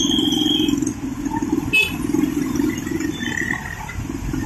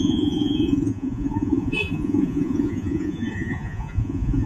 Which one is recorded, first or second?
first